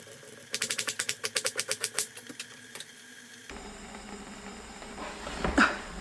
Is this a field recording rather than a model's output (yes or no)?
yes